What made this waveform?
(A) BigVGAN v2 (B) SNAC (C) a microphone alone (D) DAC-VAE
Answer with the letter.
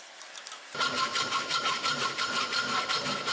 A